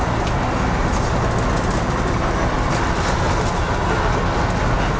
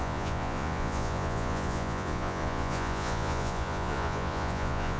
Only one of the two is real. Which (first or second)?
first